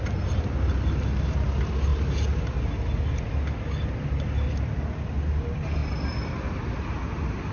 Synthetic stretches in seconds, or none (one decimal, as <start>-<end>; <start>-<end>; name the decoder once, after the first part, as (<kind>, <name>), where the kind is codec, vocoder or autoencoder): none